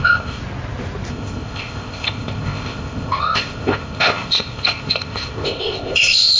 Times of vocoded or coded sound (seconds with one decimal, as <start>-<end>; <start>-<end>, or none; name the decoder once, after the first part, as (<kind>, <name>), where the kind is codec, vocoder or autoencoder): 0.0-0.4 (codec, ZipCodec); 1.1-6.4